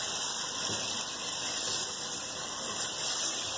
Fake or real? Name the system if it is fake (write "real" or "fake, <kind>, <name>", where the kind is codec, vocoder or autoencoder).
fake, vocoder, BigVGAN v2